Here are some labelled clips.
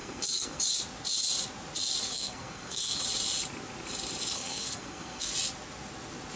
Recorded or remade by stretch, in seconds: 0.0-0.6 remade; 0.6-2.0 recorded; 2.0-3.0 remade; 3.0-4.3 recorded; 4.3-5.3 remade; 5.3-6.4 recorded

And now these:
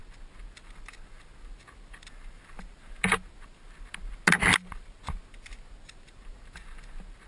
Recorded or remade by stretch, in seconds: 0.0-7.3 recorded

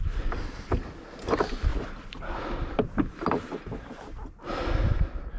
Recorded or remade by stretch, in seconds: 0.0-5.4 recorded

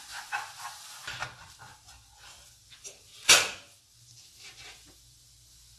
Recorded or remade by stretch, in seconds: 0.0-5.8 recorded

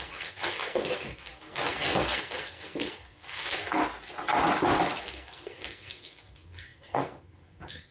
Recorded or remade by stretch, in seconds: 0.0-3.8 remade; 3.8-5.0 recorded; 5.0-7.9 remade

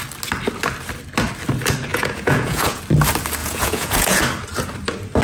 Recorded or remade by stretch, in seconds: 0.0-1.9 recorded; 1.9-2.8 remade; 2.8-3.4 recorded; 3.4-4.2 remade; 4.2-5.2 recorded

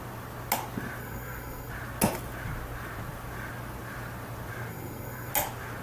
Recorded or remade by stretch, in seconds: 0.0-1.0 recorded; 1.0-1.7 remade; 1.7-4.7 recorded; 4.7-5.3 remade; 5.3-5.8 recorded

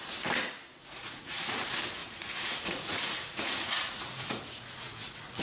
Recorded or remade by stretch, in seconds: 0.0-0.8 recorded; 0.8-1.6 remade; 1.6-2.0 recorded; 2.0-5.4 remade